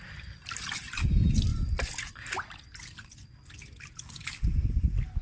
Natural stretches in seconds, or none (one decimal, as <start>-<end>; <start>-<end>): 1.5-3.3